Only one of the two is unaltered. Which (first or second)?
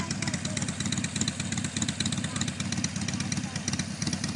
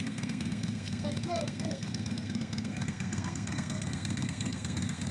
first